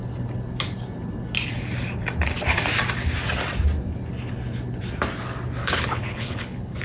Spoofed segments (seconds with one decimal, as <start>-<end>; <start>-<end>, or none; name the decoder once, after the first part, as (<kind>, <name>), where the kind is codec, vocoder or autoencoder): 5.6-6.8 (codec, HILCodec)